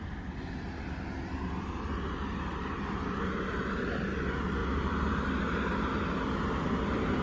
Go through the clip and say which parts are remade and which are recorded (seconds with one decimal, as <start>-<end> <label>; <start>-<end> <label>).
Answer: 0.0-4.6 recorded; 4.6-5.3 remade; 5.3-7.2 recorded